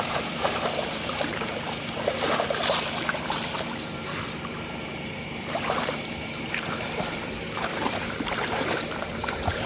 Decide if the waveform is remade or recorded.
remade